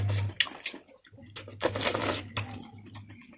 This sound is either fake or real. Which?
real